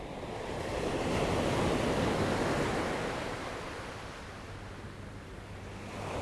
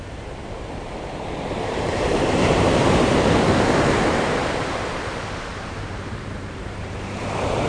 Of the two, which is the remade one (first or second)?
second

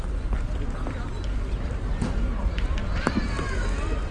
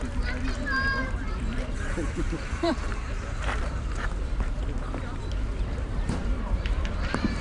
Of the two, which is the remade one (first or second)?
second